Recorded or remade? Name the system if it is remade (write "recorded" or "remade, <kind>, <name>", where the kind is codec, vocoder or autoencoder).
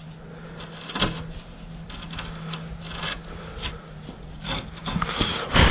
recorded